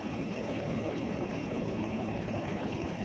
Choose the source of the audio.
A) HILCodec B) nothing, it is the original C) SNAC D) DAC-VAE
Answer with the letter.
A